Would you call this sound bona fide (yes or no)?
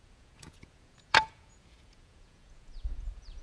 no